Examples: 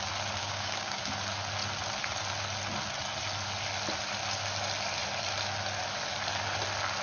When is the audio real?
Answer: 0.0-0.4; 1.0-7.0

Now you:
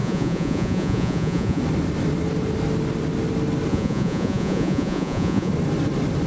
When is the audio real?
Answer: 1.6-3.7; 5.5-6.3

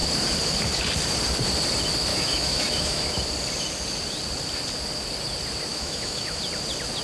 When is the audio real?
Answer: 0.0-2.1; 3.1-5.7; 6.4-7.0

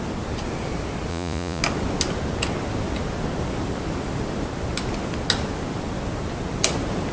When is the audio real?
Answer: 0.0-1.1; 1.6-7.1

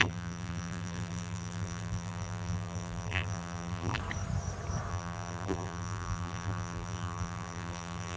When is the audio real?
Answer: 4.0-4.9

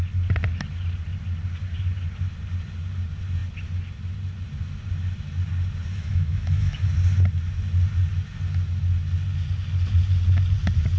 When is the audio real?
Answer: 0.0-5.9; 6.9-11.0